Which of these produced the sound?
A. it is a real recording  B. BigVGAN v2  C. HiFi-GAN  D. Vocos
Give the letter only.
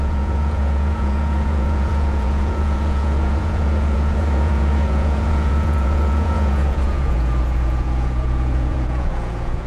D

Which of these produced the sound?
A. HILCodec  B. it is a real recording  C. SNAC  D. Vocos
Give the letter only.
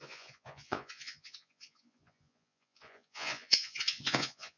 D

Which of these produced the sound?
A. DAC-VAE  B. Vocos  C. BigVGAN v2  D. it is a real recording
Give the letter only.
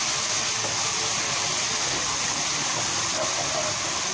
D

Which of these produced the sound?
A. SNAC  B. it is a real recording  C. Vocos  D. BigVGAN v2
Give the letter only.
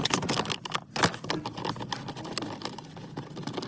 B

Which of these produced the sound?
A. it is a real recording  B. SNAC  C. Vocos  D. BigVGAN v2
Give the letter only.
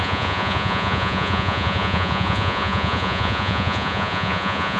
C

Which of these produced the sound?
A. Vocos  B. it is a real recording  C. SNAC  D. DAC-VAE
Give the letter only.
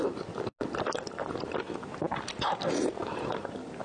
B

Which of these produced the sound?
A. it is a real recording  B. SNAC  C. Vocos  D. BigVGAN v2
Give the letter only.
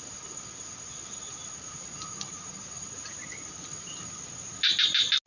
A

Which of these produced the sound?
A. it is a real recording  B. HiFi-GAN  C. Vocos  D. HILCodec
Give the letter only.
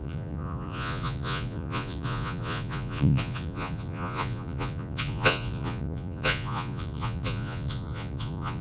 C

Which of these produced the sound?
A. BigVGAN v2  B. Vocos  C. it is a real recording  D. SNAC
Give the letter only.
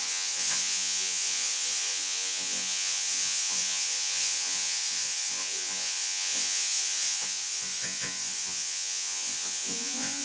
B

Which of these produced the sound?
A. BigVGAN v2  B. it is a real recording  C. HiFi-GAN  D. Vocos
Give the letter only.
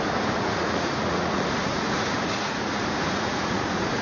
D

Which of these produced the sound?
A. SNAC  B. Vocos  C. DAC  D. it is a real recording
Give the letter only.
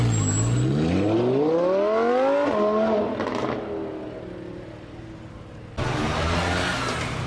D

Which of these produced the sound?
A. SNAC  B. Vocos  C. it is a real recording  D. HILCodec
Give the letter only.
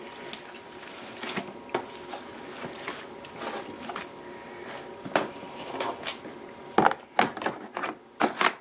C